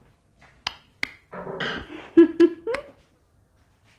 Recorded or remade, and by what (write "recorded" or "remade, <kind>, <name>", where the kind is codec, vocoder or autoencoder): recorded